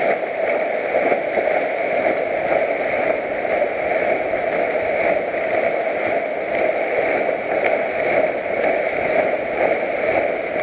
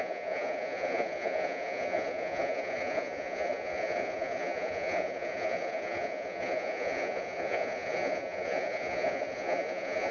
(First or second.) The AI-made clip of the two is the second